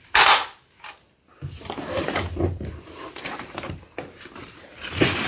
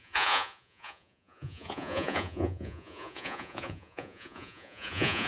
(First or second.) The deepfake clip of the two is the second